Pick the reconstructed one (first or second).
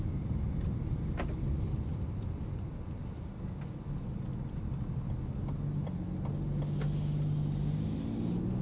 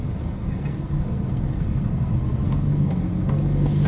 second